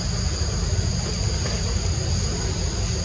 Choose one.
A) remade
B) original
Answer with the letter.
B